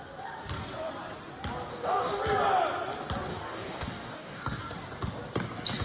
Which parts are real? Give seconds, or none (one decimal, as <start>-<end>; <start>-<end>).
0.0-1.7; 2.2-3.3; 4.6-5.8